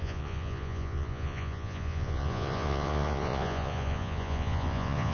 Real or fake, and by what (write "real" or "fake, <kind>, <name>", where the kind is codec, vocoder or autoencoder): fake, vocoder, Vocos